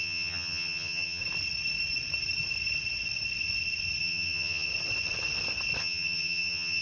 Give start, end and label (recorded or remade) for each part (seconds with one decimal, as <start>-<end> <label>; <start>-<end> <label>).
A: 0.0-1.2 remade; 1.2-4.0 recorded; 4.0-4.7 remade; 4.7-5.8 recorded; 5.8-6.8 remade